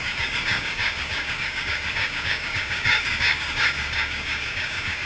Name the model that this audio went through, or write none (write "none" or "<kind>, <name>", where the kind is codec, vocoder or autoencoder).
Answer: codec, DAC